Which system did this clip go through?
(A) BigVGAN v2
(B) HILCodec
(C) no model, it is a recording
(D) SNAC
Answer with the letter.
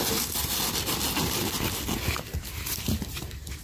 C